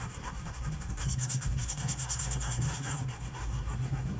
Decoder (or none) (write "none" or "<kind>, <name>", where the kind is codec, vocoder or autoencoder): codec, SNAC